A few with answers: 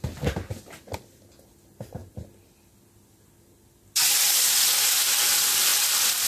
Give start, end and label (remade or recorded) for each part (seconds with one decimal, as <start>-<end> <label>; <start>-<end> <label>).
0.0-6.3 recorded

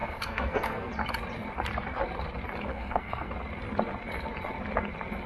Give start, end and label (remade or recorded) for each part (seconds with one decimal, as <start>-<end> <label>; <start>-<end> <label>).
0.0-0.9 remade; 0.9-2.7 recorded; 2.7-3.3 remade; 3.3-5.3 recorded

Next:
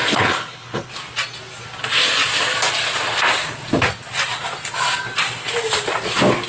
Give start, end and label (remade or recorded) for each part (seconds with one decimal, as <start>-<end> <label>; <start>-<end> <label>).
0.0-0.9 remade; 0.9-6.5 recorded

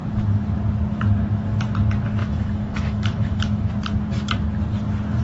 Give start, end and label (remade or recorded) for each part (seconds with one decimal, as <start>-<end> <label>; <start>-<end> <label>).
0.0-2.2 recorded; 2.2-3.7 remade; 3.7-5.2 recorded

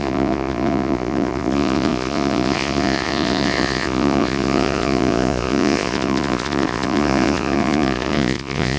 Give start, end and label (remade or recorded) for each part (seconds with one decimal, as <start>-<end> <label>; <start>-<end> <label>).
0.0-8.8 remade